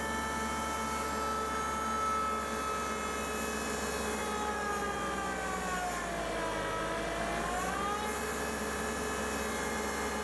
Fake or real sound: real